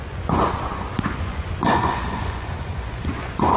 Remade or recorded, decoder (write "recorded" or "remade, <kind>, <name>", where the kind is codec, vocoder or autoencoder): remade, vocoder, Vocos